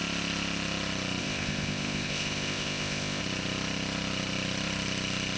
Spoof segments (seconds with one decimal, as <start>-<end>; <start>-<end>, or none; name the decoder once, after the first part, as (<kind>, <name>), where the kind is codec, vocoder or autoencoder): 1.2-3.2 (codec, ZipCodec)